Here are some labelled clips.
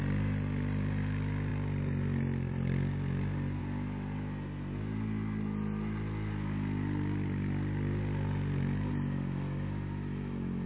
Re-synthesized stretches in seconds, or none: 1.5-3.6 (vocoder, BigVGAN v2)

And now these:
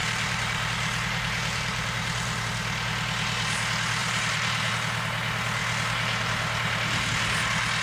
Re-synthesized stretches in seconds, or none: 0.0-2.4 (vocoder, BigVGAN v2); 4.0-4.7

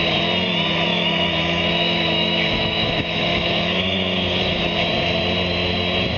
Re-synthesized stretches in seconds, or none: 0.9-4.6 (autoencoder, DAC-VAE)

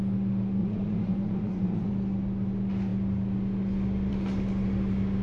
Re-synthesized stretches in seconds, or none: 0.6-1.9 (vocoder, Vocos)

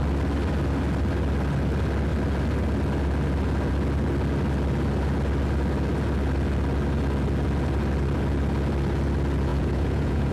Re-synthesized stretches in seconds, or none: 9.5-10.3 (vocoder, Vocos)

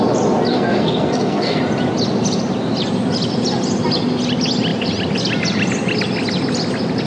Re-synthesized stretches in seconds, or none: 0.5-1.6 (codec, SNAC)

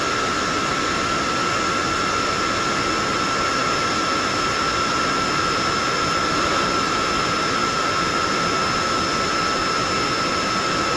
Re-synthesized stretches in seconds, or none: none